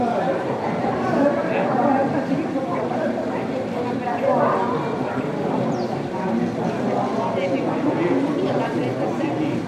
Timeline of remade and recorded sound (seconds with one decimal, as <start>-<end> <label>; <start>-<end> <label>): 0.0-9.7 recorded